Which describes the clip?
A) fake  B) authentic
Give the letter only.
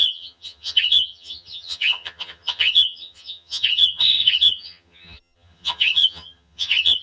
A